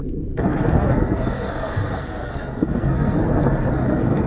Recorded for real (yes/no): no